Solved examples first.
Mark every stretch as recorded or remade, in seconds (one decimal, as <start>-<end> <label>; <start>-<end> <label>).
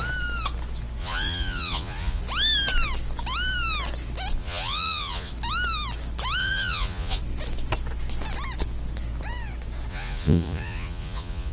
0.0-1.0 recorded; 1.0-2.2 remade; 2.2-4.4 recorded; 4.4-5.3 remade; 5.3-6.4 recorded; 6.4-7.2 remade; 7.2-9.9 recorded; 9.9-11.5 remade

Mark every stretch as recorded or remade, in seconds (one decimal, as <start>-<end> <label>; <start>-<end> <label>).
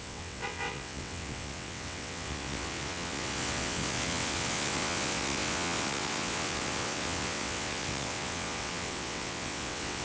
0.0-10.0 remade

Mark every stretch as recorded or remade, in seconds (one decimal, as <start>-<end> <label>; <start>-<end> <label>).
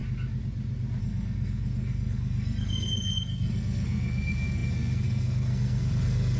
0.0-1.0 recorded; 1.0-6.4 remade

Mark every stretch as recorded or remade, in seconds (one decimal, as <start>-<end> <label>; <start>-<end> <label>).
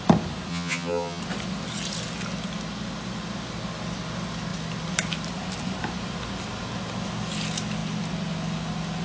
0.0-0.5 recorded; 0.5-1.2 remade; 1.2-9.0 recorded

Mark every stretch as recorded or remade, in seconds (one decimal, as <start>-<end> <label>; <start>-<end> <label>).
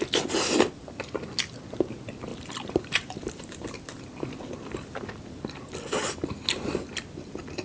0.0-2.3 recorded; 2.3-3.7 remade; 3.7-7.6 recorded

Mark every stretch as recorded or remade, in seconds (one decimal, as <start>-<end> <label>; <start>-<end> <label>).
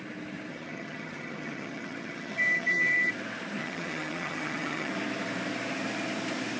0.0-0.5 recorded; 0.5-3.1 remade; 3.1-3.6 recorded; 3.6-4.9 remade; 4.9-6.6 recorded